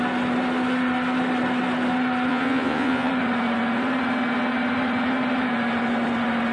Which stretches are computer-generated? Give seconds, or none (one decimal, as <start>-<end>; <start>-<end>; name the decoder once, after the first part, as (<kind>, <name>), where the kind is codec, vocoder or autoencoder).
2.3-3.1 (vocoder, Vocos)